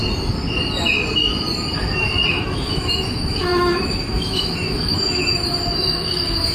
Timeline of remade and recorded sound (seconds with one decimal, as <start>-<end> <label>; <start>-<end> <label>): 0.0-2.3 recorded; 2.3-6.5 remade